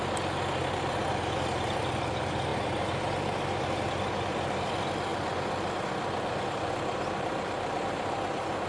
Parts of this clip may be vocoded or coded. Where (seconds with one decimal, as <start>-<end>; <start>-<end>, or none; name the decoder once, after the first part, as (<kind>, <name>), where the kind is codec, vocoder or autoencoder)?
none